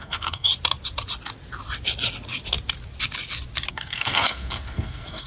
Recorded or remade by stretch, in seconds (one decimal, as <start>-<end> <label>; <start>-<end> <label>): 0.0-0.5 remade; 0.5-3.7 recorded; 3.7-5.3 remade